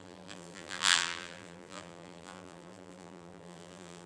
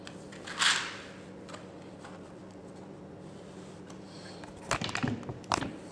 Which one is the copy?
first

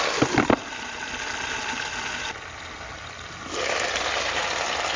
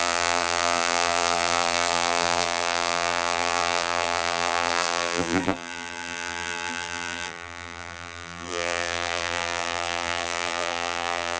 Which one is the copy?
second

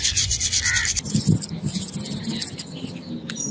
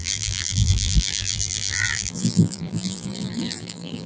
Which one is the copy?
second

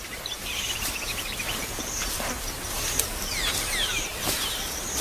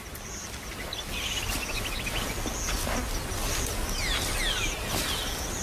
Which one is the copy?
first